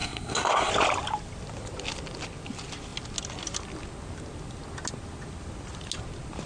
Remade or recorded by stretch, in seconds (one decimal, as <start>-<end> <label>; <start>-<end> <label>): 0.0-0.7 remade; 0.7-6.5 recorded